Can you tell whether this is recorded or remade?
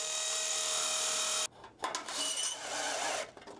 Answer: recorded